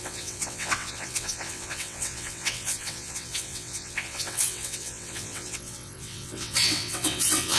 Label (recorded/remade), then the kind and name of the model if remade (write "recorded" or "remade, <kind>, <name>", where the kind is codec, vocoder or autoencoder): remade, vocoder, WaveNeXt